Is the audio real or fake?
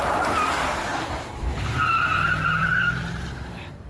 fake